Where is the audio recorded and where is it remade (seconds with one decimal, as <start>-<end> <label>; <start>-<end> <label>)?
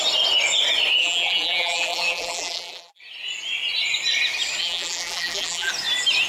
0.0-1.0 recorded; 1.0-3.0 remade; 3.0-4.6 recorded; 4.6-5.7 remade; 5.7-6.3 recorded